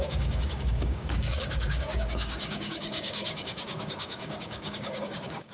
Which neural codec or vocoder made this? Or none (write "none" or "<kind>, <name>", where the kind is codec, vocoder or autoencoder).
codec, DAC